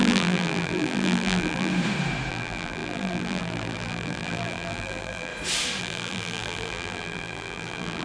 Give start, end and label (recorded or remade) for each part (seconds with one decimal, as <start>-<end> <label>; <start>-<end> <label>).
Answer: 0.0-1.7 remade; 1.7-2.3 recorded; 2.3-5.3 remade; 5.3-5.8 recorded; 5.8-8.0 remade